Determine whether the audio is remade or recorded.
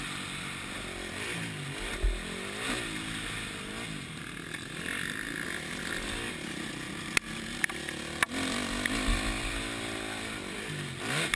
recorded